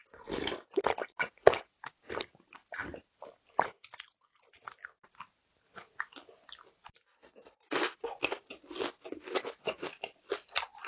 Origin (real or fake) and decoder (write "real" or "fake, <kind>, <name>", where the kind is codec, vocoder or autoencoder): real